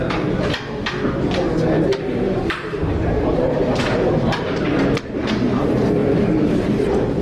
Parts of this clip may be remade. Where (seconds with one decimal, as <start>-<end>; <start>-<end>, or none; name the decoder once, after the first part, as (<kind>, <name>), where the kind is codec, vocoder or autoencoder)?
2.1-5.6 (vocoder, BigVGAN v2); 6.0-6.8